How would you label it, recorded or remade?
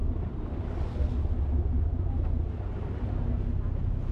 recorded